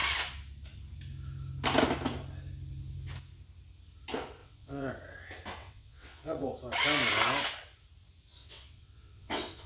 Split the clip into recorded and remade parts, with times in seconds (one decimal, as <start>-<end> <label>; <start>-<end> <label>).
0.0-4.4 recorded; 4.4-4.9 remade; 4.9-5.6 recorded; 5.6-6.5 remade; 6.5-8.4 recorded; 8.4-9.7 remade